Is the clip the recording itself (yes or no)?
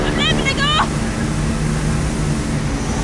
yes